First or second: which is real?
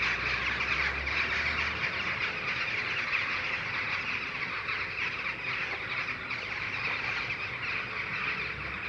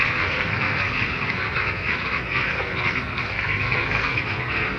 first